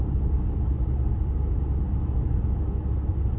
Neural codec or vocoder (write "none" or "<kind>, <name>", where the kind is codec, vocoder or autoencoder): none